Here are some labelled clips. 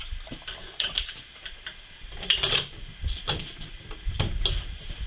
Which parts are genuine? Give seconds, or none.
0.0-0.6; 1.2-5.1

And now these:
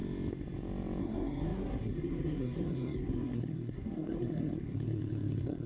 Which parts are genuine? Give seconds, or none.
0.0-1.0

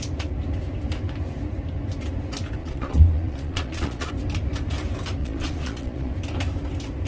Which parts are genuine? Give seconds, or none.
0.0-2.6; 4.1-5.2; 6.1-7.1

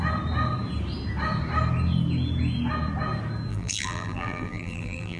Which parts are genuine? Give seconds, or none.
0.0-3.5

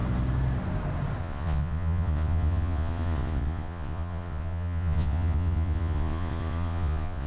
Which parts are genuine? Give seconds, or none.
0.0-1.2